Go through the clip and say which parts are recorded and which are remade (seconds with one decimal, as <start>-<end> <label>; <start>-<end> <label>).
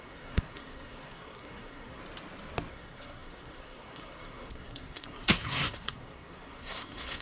0.0-2.0 remade; 2.0-2.7 recorded; 2.7-7.2 remade